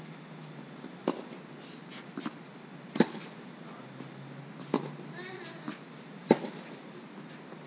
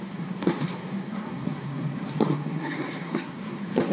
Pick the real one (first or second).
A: first